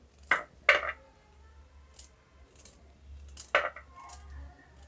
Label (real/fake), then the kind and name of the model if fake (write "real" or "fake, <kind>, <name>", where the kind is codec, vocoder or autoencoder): real